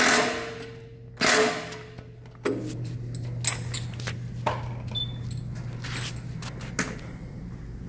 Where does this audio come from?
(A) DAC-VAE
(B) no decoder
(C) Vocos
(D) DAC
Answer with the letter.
B